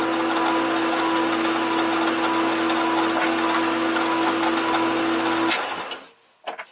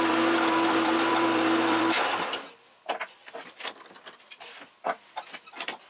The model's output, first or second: second